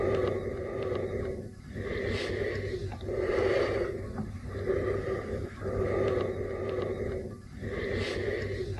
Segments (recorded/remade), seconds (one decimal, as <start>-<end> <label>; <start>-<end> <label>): 0.0-8.8 recorded